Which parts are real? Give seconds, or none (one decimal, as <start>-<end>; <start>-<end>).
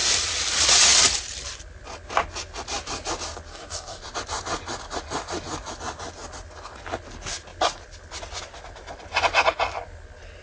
0.0-3.5; 4.0-10.4